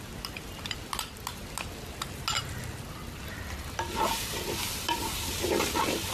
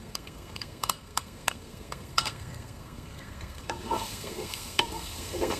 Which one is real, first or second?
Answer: first